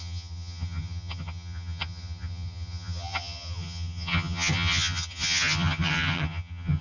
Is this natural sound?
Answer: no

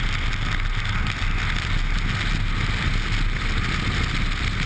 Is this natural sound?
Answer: yes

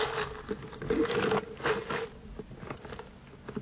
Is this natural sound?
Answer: yes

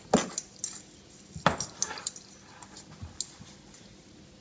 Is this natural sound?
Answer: yes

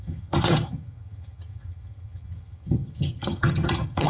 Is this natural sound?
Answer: no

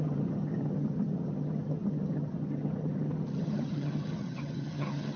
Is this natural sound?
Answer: no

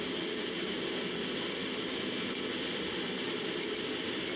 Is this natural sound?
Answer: yes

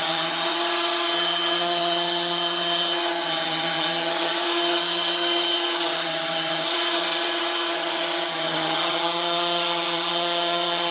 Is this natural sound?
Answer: no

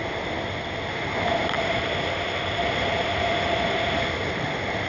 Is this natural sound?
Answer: yes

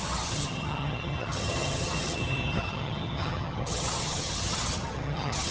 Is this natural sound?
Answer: no